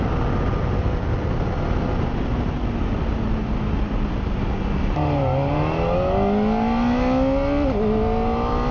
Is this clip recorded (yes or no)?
yes